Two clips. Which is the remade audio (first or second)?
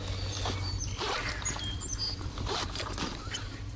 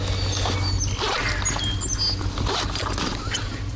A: first